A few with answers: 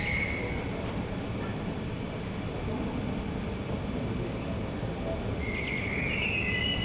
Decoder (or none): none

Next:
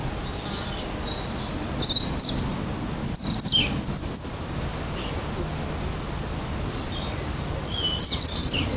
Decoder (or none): none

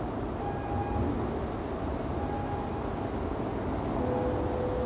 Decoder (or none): none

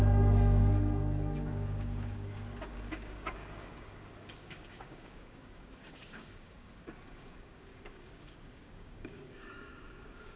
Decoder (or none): codec, DAC